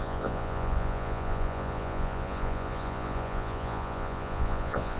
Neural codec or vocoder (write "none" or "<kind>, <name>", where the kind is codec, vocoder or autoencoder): vocoder, Vocos